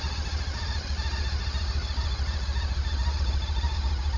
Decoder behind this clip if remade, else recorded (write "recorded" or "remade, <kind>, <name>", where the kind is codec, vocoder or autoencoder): recorded